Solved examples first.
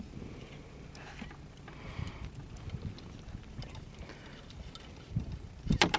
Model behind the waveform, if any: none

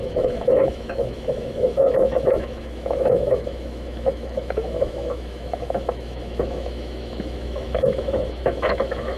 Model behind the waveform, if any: autoencoder, DAC-VAE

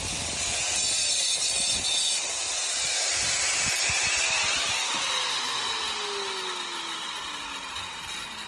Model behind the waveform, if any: none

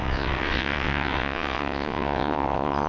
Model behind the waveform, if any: vocoder, WaveNeXt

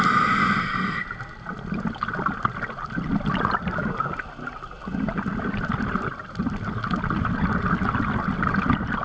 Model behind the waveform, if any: none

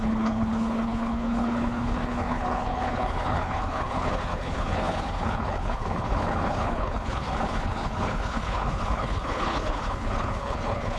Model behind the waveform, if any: codec, HILCodec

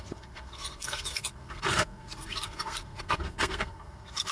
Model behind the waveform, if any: codec, SNAC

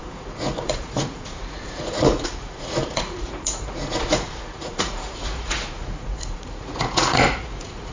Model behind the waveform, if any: vocoder, Vocos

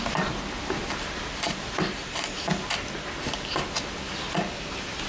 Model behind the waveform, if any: none